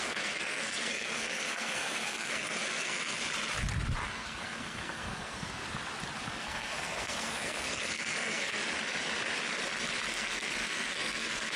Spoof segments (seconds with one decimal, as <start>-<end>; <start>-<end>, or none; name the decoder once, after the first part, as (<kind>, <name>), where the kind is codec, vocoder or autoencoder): 0.0-3.2 (codec, SNAC); 4.1-5.6; 6.2-8.6; 10.1-11.6

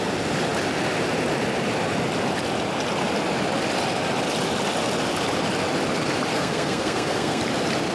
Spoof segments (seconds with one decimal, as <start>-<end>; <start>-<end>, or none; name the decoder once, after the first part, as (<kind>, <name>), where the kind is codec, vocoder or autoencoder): 6.3-7.4 (codec, SNAC)

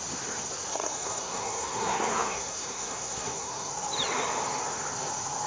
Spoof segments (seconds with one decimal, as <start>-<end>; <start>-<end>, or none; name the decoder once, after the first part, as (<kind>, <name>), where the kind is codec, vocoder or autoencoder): 0.7-3.7 (codec, SNAC)

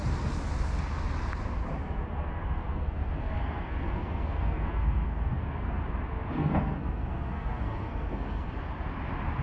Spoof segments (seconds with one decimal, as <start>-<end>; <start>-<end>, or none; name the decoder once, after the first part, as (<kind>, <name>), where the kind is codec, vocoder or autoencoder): 1.8-5.8 (codec, SNAC); 6.4-8.5

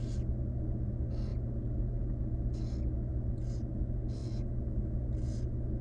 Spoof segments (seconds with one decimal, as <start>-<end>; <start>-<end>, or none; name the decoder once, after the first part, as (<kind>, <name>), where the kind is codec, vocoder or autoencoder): none

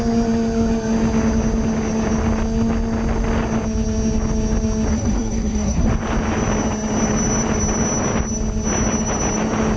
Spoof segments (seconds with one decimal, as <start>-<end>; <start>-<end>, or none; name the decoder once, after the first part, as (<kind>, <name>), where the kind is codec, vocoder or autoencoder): 4.9-5.9 (codec, SNAC)